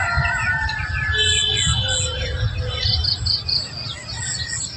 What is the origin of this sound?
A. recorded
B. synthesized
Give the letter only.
A